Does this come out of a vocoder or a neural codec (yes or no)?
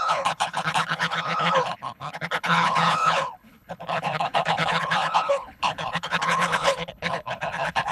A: yes